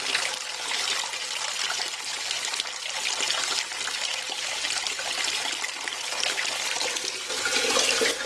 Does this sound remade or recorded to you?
recorded